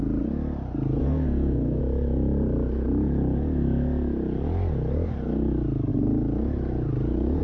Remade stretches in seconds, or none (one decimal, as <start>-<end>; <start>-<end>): 1.0-1.8